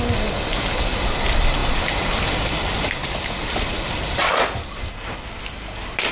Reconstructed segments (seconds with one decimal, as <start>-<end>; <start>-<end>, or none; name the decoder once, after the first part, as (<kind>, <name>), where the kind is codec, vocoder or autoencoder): 3.0-4.0 (vocoder, BigVGAN v2)